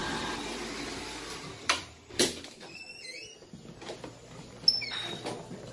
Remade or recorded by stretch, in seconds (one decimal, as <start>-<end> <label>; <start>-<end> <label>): 0.0-5.7 recorded